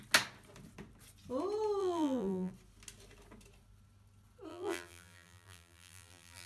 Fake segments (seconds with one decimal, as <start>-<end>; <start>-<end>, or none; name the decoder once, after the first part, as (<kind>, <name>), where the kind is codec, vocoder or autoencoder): 1.8-2.5 (vocoder, BigVGAN v2); 4.5-6.5